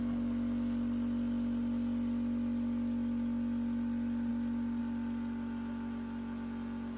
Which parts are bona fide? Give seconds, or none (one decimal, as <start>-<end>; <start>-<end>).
0.0-7.0